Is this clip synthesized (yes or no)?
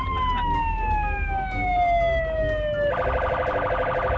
no